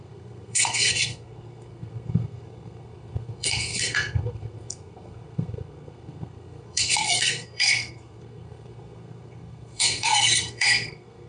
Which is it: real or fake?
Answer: fake